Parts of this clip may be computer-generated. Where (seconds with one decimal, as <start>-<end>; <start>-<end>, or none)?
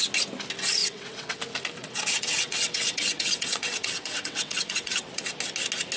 0.8-1.4; 1.8-5.3